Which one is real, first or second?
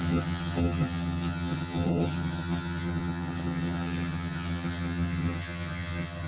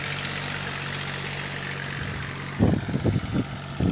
second